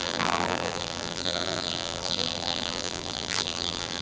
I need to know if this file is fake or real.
fake